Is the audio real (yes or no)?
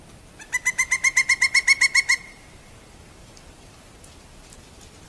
yes